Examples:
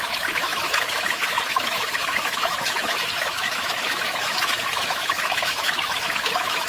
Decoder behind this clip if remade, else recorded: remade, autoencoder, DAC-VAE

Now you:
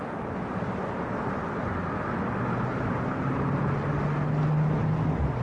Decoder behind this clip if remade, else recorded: recorded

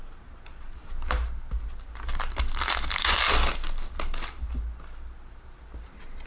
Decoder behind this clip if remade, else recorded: recorded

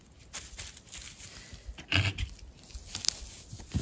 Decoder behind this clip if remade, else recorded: recorded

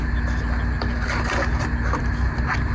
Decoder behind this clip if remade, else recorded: recorded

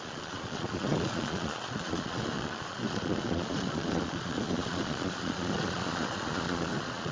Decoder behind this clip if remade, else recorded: remade, vocoder, Vocos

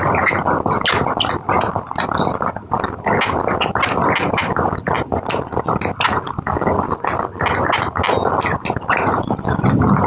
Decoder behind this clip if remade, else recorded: recorded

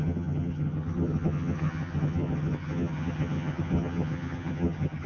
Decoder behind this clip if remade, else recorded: remade, vocoder, HiFi-GAN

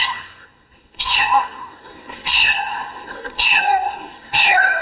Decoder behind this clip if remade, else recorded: remade, codec, SNAC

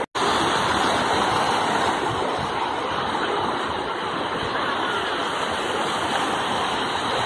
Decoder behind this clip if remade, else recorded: recorded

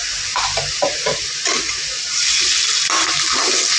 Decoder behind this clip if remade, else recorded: recorded